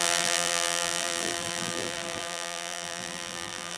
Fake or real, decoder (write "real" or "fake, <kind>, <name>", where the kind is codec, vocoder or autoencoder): fake, vocoder, BigVGAN v2